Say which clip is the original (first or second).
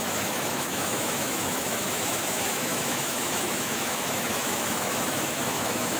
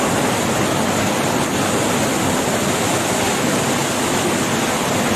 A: second